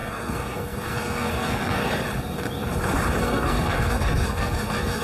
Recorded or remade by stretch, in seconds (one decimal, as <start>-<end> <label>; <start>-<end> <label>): 0.0-1.8 remade; 1.8-3.2 recorded; 3.2-5.0 remade